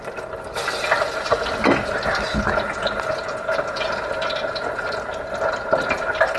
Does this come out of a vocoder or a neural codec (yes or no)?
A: no